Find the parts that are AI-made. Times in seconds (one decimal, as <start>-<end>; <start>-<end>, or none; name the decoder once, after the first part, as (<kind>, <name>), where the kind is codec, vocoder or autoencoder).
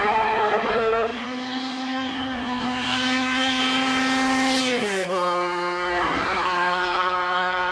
0.0-3.6 (codec, SNAC); 4.6-7.7